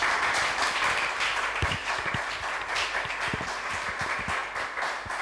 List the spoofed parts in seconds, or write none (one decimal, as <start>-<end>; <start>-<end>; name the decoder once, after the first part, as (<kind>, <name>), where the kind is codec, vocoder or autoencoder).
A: none